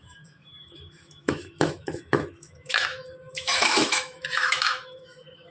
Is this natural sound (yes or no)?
no